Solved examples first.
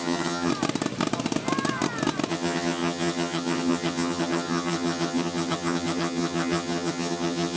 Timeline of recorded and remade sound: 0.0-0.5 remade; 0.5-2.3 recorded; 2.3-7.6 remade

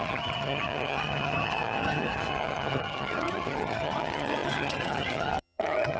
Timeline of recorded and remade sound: 0.0-6.0 remade

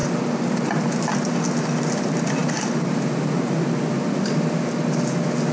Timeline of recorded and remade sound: 0.0-5.5 recorded

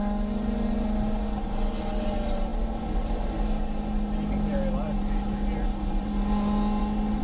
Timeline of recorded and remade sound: 0.0-7.2 recorded

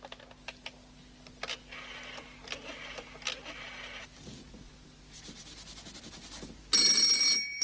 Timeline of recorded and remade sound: 0.0-7.6 recorded

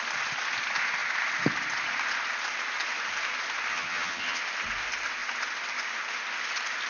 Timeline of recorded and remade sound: 0.0-3.7 recorded; 3.7-4.4 remade; 4.4-6.9 recorded